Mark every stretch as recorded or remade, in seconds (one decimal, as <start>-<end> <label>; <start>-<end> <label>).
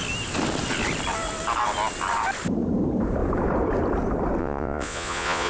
0.0-4.4 recorded; 4.4-5.5 remade